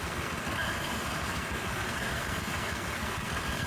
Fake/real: fake